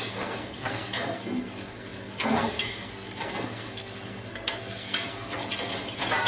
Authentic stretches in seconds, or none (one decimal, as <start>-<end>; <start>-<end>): 5.4-6.3